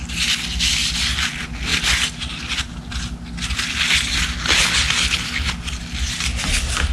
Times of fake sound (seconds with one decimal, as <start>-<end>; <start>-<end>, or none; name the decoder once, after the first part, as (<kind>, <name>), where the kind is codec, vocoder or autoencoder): 4.6-5.5 (codec, HILCodec)